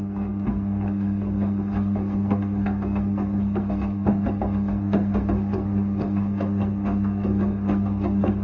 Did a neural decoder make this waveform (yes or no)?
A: yes